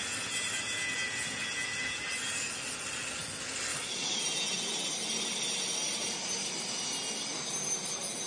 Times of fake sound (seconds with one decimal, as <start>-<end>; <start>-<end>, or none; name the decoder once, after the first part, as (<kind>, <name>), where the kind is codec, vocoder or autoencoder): 3.7-4.2 (vocoder, Vocos)